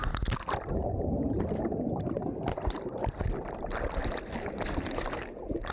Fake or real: real